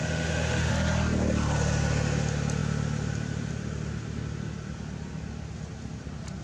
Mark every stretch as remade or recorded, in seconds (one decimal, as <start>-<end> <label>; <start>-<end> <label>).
0.0-0.7 remade; 0.7-6.4 recorded